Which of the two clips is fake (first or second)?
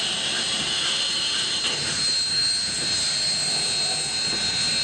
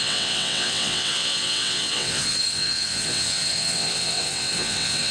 second